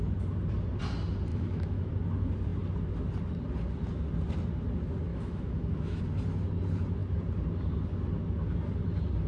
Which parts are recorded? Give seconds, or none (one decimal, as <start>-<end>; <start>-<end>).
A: 0.0-1.3; 1.9-5.1; 6.0-9.3